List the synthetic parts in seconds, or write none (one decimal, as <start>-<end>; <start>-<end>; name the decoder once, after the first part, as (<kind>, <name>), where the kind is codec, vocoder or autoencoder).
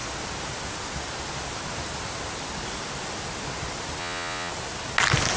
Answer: 4.0-4.5 (vocoder, Vocos)